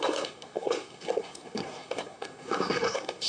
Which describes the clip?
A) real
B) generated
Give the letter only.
B